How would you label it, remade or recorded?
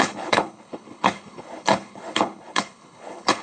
remade